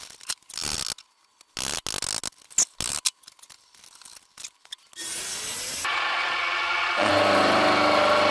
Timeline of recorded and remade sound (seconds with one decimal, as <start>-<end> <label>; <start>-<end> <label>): 0.0-5.9 recorded; 5.9-7.1 remade; 7.1-8.3 recorded